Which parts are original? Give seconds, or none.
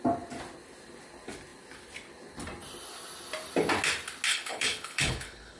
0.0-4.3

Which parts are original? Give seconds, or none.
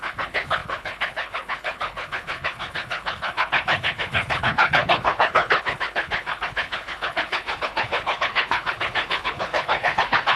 none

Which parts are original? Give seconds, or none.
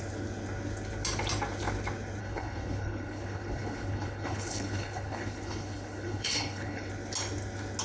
0.0-2.2; 6.9-7.8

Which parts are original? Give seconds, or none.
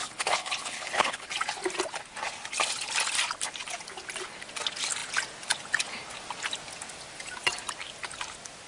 1.3-8.7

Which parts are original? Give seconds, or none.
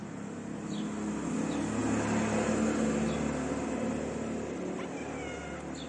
0.0-5.9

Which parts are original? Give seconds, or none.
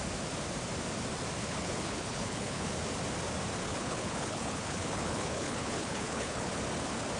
0.0-1.4; 2.7-3.7; 6.5-7.2